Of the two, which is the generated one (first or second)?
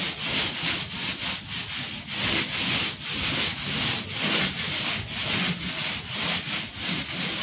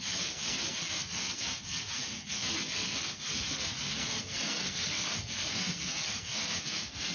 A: second